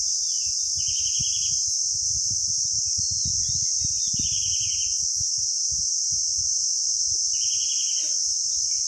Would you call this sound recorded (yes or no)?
yes